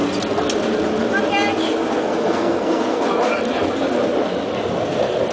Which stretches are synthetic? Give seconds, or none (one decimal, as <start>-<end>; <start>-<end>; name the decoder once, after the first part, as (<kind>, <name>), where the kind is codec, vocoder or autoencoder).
2.0-3.0 (codec, SNAC)